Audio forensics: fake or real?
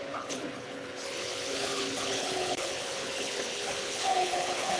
fake